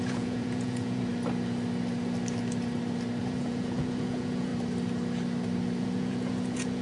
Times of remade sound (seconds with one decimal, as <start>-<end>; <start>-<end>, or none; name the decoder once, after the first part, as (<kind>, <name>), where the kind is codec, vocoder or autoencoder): 0.0-1.1 (vocoder, Vocos); 3.2-4.5; 5.8-6.8